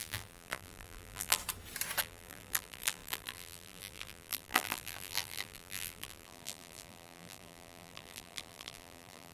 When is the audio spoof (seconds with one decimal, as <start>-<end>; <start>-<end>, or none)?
0.0-1.4; 2.0-9.3